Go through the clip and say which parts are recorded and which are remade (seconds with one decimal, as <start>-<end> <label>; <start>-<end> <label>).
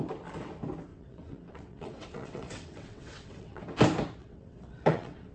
0.0-0.9 recorded; 0.9-3.6 remade; 3.6-4.2 recorded; 4.2-5.3 remade